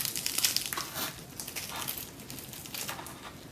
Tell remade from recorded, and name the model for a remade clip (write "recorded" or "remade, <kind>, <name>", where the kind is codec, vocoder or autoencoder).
recorded